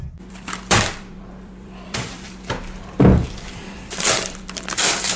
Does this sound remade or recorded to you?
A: remade